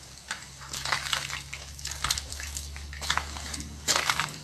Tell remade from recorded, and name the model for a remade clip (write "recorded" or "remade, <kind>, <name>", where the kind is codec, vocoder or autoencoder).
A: remade, codec, DAC